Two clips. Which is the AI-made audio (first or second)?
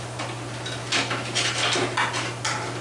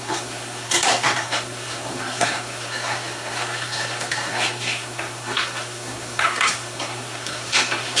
second